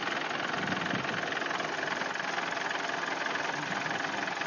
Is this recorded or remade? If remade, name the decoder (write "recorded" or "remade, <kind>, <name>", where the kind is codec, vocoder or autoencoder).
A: recorded